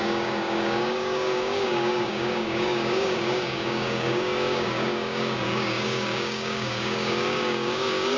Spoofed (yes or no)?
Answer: yes